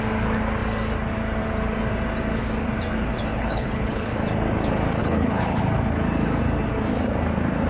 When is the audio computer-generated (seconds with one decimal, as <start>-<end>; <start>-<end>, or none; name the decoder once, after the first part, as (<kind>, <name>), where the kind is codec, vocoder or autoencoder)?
3.3-4.1 (codec, HILCodec); 5.0-5.6